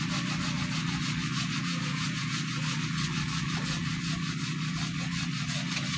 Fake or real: fake